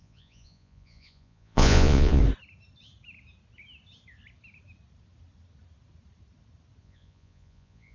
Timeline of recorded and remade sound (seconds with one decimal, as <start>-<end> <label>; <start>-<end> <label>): 0.0-2.2 remade; 2.2-6.8 recorded; 6.8-7.9 remade